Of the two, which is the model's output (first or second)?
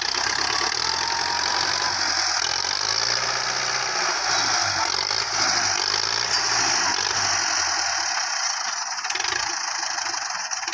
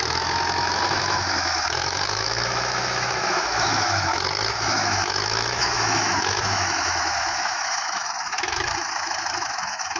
second